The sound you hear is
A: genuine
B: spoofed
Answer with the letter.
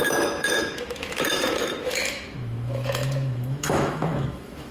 B